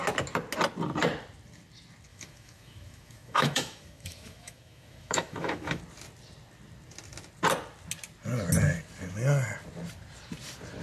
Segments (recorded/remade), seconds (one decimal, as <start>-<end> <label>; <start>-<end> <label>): 0.0-2.1 recorded; 2.1-5.8 remade; 5.8-10.8 recorded